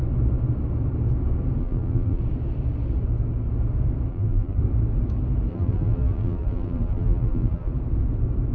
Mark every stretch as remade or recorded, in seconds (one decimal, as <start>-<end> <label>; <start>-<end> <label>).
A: 0.0-1.6 recorded; 1.6-2.2 remade; 2.2-4.1 recorded; 4.1-4.6 remade; 4.6-5.5 recorded; 5.5-7.7 remade; 7.7-8.5 recorded